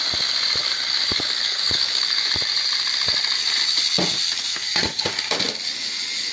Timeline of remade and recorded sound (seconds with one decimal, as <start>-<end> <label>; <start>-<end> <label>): 0.0-0.6 recorded; 0.6-2.3 remade; 2.3-6.3 recorded